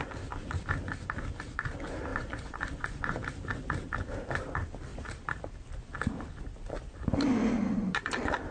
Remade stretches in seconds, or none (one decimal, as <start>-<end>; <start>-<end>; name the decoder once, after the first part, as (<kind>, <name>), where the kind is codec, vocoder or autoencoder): 2.1-3.2 (vocoder, Vocos)